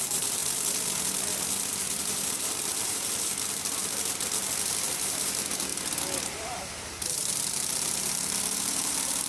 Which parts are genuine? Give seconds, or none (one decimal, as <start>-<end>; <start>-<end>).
0.4-1.7; 3.3-4.9; 5.7-6.2